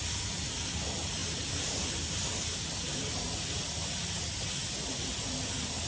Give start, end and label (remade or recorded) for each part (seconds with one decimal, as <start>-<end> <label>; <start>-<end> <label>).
0.0-5.9 recorded